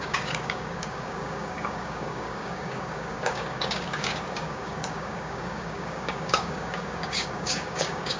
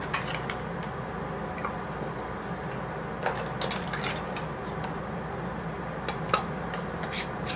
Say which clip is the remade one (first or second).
first